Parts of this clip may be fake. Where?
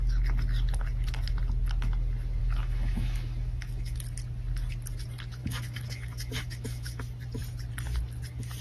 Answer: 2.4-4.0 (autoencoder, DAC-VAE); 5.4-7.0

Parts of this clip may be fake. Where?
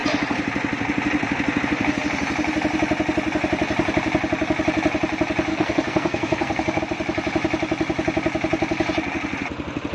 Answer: 5.5-6.8 (codec, SNAC)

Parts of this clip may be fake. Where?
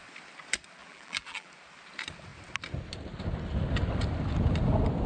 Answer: 0.8-1.5 (vocoder, BigVGAN v2)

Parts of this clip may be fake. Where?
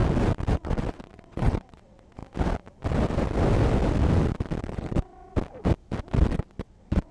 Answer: 0.5-2.2 (vocoder, WaveNeXt); 4.6-5.2; 6.3-7.1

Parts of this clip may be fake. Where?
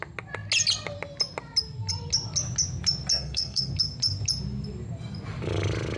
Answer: 3.1-3.7 (codec, SNAC)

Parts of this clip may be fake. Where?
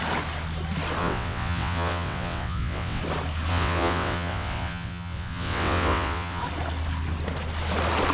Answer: 1.0-3.0 (vocoder, WaveNeXt); 3.5-6.4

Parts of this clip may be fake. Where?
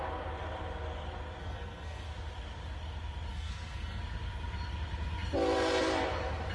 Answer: 1.4-2.1 (codec, SNAC); 3.3-4.0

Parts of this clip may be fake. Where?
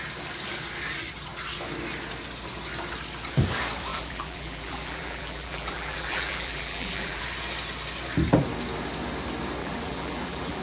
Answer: 3.9-7.2 (vocoder, BigVGAN v2); 9.6-10.6